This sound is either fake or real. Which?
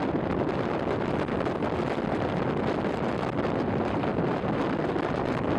real